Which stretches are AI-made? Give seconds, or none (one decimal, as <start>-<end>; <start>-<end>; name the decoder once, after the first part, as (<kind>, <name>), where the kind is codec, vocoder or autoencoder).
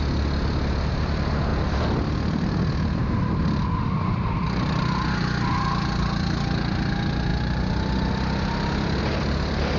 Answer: none